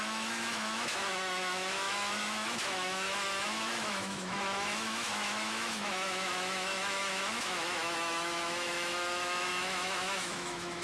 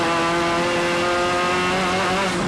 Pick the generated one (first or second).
first